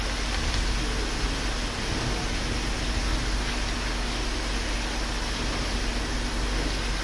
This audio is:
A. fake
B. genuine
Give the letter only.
B